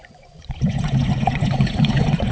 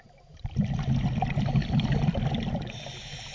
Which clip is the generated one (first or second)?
first